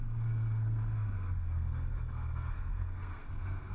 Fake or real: fake